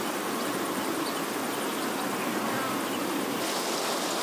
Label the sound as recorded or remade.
recorded